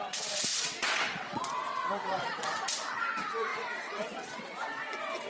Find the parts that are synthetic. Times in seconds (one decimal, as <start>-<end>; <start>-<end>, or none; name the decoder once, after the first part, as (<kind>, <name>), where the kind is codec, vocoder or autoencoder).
0.0-5.3 (vocoder, WaveNeXt)